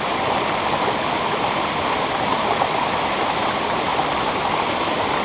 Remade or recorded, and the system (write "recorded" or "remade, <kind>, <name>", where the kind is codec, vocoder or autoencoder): recorded